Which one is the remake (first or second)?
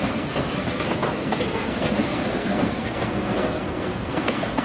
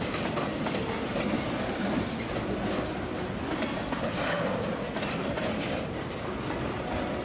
first